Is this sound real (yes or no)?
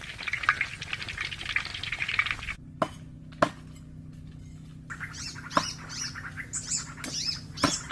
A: yes